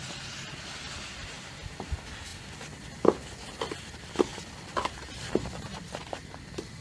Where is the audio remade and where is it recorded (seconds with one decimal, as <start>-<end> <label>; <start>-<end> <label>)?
0.0-4.3 recorded; 4.3-4.9 remade; 4.9-6.8 recorded